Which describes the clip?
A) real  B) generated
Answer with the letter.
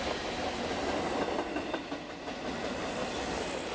A